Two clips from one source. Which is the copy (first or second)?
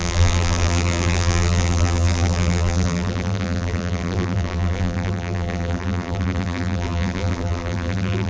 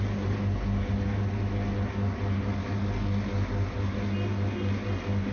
first